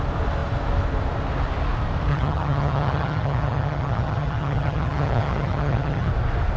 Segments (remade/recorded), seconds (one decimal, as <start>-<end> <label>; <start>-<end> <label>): 0.0-2.1 recorded; 2.1-6.1 remade; 6.1-6.6 recorded